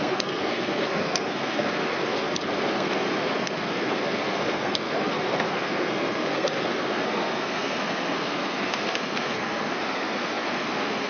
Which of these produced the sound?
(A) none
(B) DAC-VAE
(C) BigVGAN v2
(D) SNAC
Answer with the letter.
D